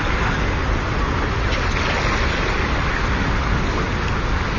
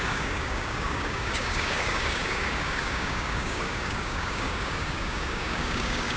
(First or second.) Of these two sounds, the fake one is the second